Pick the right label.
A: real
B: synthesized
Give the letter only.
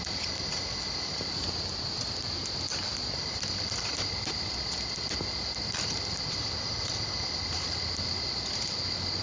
A